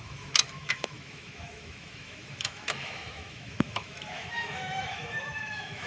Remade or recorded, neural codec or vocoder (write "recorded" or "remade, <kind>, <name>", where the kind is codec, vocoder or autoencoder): remade, autoencoder, DAC-VAE